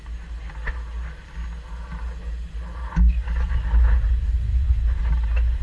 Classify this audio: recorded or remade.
recorded